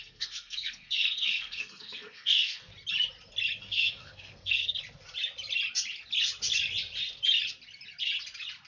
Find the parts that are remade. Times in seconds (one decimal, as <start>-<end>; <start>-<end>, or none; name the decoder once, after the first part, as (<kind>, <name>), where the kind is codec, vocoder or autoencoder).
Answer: 0.0-2.7 (codec, SNAC); 3.6-4.8